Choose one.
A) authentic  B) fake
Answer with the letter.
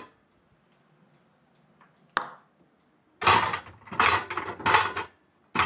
A